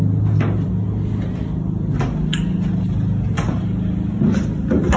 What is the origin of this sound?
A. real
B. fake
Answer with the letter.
A